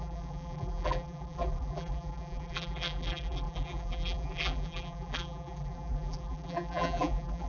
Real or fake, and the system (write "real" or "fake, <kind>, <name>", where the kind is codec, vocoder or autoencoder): fake, vocoder, BigVGAN v2